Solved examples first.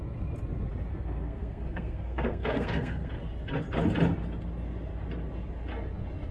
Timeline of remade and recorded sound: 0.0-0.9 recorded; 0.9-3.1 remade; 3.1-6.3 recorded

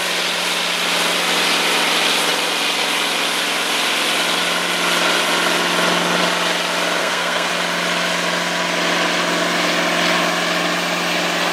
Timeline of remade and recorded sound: 0.0-7.0 recorded; 7.0-7.5 remade; 7.5-11.5 recorded

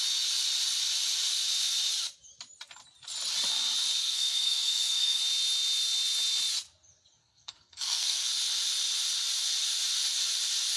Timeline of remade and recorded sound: 0.0-4.0 recorded; 4.0-5.2 remade; 5.2-7.2 recorded; 7.2-8.3 remade; 8.3-10.8 recorded

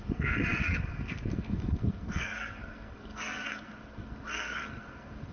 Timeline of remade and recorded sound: 0.0-5.3 remade

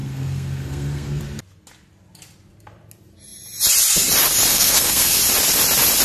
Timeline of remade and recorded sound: 0.0-1.2 remade; 1.2-4.5 recorded; 4.5-5.2 remade; 5.2-6.0 recorded